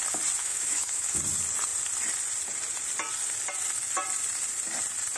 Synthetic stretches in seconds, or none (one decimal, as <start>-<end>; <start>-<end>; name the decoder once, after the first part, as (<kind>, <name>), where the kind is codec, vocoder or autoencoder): 0.4-1.2 (autoencoder, DAC-VAE)